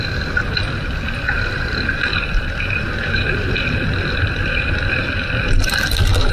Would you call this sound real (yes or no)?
no